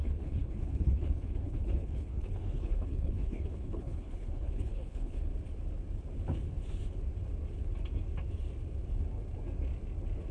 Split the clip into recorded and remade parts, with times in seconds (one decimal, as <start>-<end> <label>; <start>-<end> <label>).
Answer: 0.0-5.3 remade; 5.3-10.3 recorded